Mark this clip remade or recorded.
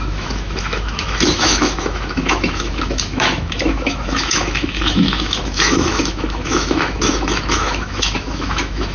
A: remade